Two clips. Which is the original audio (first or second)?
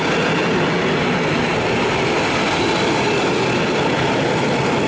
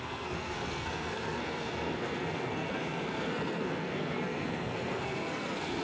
first